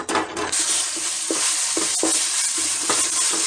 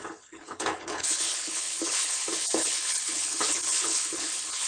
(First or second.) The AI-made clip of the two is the second